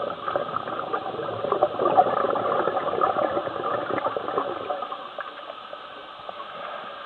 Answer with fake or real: real